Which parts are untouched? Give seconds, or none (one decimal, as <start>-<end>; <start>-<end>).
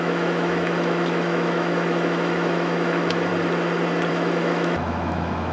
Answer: 3.3-4.1